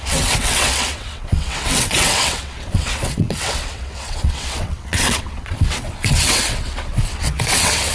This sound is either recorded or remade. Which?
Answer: remade